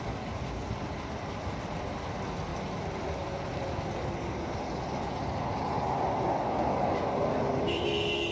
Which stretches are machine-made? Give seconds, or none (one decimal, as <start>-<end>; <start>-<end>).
none